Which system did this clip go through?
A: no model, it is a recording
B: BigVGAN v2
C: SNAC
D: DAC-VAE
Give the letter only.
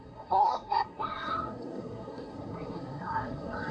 C